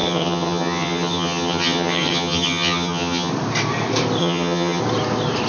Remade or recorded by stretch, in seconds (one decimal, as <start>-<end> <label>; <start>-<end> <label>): 0.0-3.3 remade; 3.3-4.2 recorded; 4.2-4.8 remade; 4.8-5.5 recorded